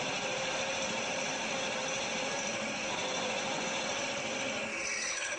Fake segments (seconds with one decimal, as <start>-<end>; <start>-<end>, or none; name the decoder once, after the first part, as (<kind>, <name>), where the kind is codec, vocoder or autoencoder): 3.0-3.7 (vocoder, Vocos)